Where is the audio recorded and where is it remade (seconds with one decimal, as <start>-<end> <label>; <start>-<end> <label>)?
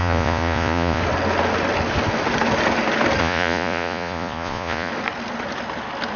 0.0-1.0 remade; 1.0-3.2 recorded; 3.2-4.9 remade; 4.9-6.2 recorded